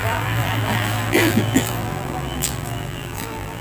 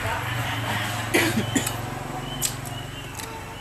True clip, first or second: second